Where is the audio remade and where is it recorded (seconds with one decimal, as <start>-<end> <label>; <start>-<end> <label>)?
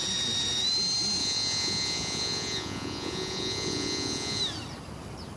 0.0-1.2 recorded; 1.2-4.4 remade; 4.4-5.4 recorded